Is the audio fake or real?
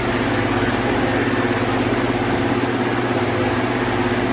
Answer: real